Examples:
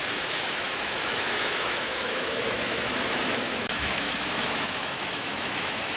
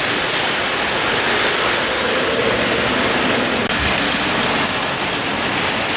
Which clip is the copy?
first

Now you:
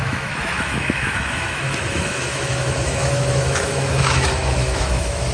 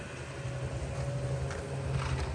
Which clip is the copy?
first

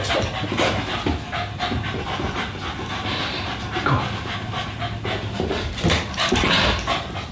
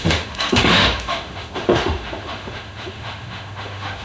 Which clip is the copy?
second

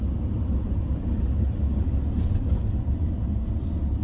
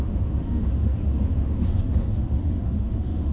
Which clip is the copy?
second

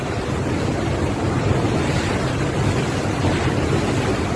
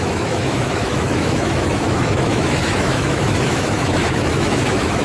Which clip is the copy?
second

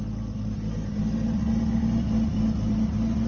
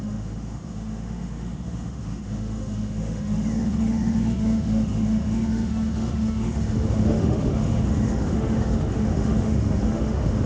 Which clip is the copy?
second